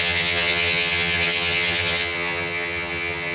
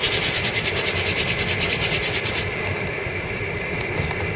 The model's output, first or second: first